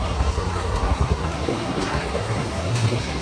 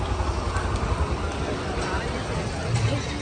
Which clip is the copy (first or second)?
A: first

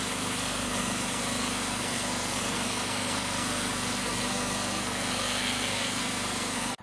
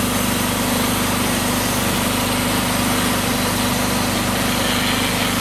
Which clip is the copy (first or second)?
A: first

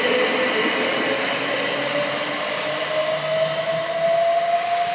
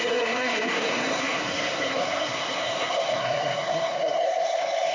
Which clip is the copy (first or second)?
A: second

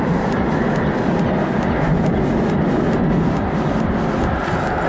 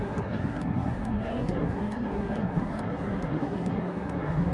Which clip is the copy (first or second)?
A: second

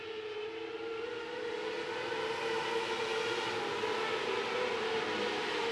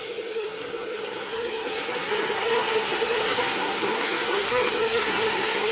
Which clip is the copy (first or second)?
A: second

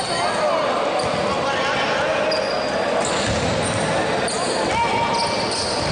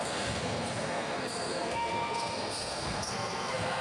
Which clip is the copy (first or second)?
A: second